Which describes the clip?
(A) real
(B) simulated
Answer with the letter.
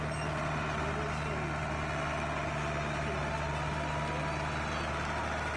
A